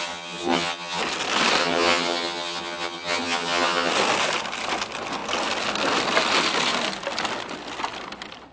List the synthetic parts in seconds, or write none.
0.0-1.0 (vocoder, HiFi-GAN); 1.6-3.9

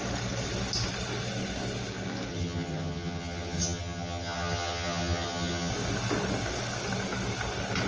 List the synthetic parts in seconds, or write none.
2.3-5.7 (vocoder, HiFi-GAN)

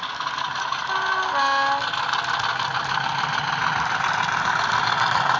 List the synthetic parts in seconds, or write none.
none

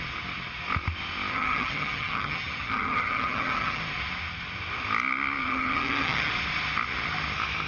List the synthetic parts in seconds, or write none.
1.3-3.8 (vocoder, HiFi-GAN); 5.4-6.3

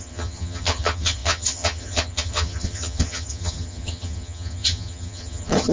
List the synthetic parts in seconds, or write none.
0.0-5.7 (vocoder, HiFi-GAN)